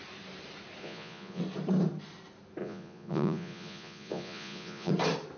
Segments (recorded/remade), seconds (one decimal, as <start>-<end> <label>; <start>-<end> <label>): 0.0-0.8 recorded; 0.8-1.4 remade; 1.4-2.6 recorded; 2.6-4.9 remade; 4.9-5.4 recorded